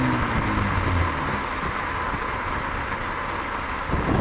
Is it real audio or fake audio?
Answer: real